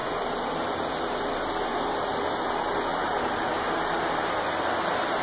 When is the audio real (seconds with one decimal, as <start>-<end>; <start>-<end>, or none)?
0.0-5.2